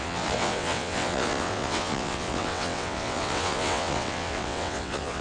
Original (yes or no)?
no